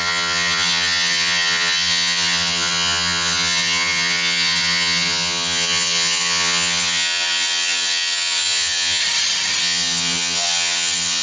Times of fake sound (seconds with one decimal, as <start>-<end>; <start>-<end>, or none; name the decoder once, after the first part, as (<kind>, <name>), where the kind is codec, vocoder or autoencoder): 0.0-9.0 (vocoder, HiFi-GAN); 9.6-11.2